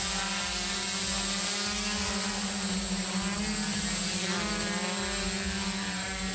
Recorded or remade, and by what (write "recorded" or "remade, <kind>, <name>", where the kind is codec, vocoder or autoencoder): recorded